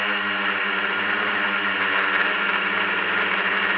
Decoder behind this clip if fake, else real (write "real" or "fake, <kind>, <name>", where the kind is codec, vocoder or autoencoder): real